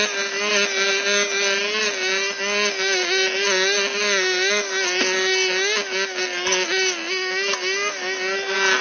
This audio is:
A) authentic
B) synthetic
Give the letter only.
A